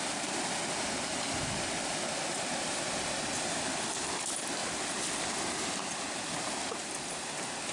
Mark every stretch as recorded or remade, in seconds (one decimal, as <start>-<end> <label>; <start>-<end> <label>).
0.0-7.7 recorded